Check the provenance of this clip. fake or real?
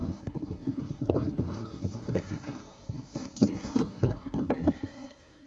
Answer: fake